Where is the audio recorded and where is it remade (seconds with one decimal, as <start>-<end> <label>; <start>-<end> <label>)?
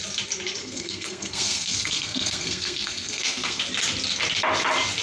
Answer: 0.0-0.6 recorded; 0.6-3.6 remade; 3.6-5.0 recorded